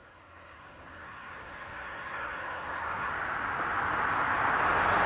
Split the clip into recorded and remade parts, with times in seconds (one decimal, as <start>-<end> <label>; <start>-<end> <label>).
0.0-3.1 remade; 3.1-5.1 recorded